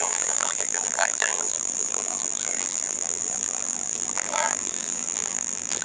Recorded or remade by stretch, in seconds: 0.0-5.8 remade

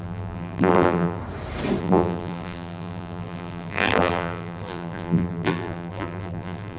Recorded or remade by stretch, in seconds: 0.0-1.2 remade; 1.2-1.8 recorded; 1.8-6.8 remade

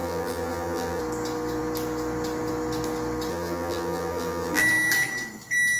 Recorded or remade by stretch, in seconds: 0.0-1.0 remade; 1.0-3.3 recorded; 3.3-4.6 remade; 4.6-5.8 recorded